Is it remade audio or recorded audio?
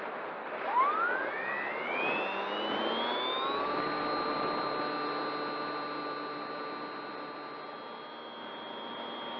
recorded